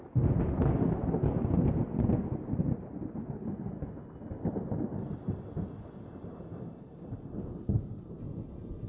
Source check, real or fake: real